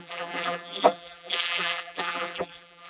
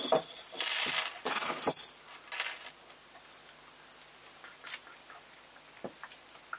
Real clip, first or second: second